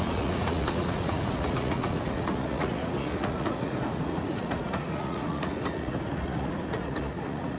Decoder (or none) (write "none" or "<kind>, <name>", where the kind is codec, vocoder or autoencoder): vocoder, Vocos